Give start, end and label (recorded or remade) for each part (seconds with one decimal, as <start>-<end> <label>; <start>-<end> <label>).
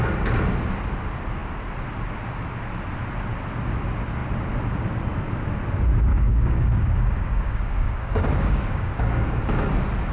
0.0-6.1 recorded; 6.1-9.4 remade; 9.4-10.1 recorded